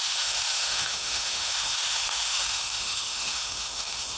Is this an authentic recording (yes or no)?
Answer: no